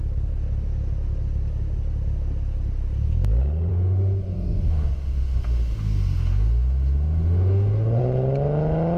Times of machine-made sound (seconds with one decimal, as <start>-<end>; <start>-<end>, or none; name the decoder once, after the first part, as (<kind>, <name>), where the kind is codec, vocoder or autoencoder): 3.7-8.0 (autoencoder, DAC-VAE)

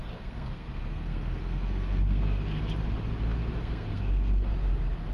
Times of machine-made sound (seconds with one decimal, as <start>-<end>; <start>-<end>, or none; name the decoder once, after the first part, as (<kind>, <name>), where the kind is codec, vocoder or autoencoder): 0.0-2.6 (codec, SNAC); 3.6-4.5

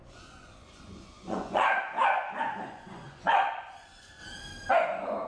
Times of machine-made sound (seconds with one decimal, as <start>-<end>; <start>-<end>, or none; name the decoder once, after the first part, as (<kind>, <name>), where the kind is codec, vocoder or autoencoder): 0.0-4.2 (vocoder, Vocos); 4.7-5.3